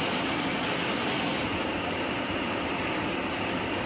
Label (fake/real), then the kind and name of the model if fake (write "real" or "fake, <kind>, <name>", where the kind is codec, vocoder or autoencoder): real